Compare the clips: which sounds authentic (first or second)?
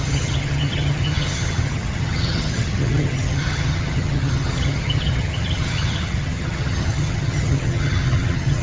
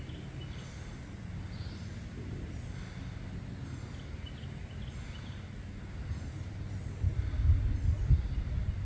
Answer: second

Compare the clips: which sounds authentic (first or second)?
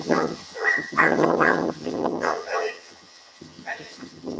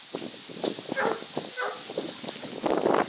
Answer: second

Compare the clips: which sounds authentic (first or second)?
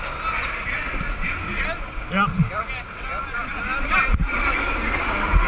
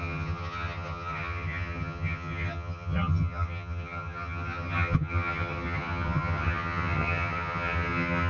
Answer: first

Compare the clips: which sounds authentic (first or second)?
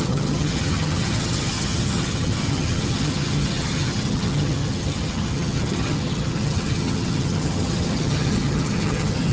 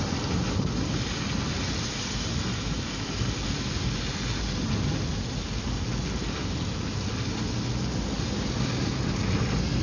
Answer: second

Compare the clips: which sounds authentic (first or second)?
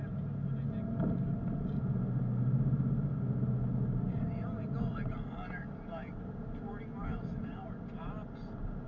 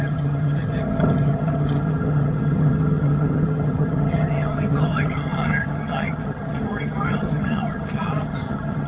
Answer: first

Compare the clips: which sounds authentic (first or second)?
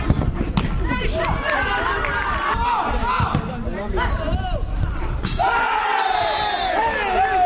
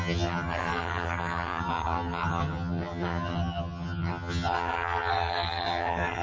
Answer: first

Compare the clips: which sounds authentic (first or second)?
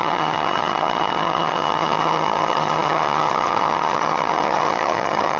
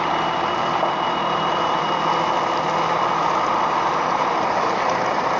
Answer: second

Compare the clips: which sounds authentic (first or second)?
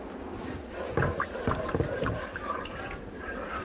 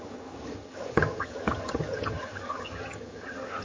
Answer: first